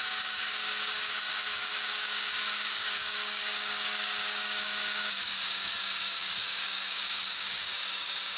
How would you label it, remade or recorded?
remade